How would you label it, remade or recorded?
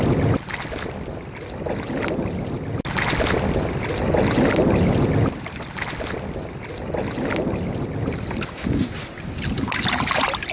recorded